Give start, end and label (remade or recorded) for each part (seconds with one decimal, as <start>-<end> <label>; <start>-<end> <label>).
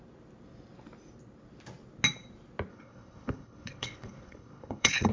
0.0-2.7 recorded; 2.7-5.1 remade